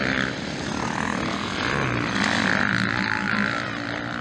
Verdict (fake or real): real